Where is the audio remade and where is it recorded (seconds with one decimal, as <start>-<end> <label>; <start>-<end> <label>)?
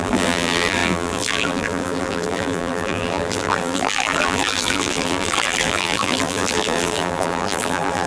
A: 0.0-8.1 remade